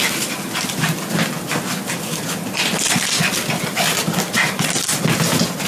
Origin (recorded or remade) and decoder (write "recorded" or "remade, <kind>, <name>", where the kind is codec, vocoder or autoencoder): recorded